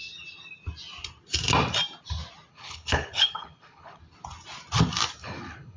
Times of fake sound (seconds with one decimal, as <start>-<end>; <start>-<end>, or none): 2.5-4.0; 5.2-5.8